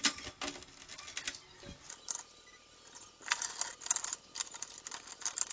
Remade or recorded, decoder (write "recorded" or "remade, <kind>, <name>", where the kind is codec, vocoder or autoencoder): recorded